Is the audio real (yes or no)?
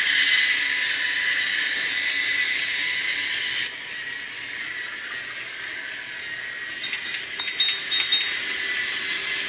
yes